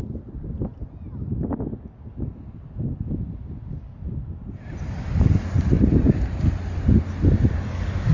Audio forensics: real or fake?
real